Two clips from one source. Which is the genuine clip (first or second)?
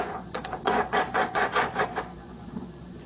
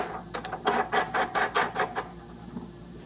second